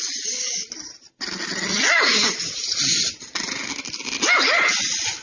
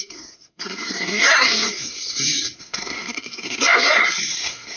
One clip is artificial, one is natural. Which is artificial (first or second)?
second